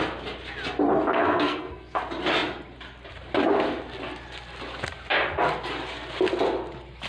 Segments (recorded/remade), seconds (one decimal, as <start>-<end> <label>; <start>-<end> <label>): 0.0-1.1 recorded; 1.1-2.0 remade; 2.0-7.1 recorded